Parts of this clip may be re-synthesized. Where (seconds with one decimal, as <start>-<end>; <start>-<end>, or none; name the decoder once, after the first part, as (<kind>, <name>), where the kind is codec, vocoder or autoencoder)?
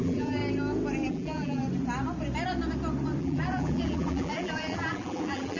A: 0.0-0.4 (vocoder, BigVGAN v2); 1.1-1.6; 3.2-5.6